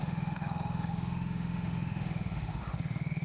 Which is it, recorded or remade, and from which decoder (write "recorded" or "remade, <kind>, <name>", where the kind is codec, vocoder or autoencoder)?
remade, autoencoder, DAC-VAE